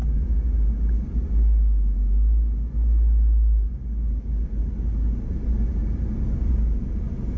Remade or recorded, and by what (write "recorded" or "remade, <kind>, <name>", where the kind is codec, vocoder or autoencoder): recorded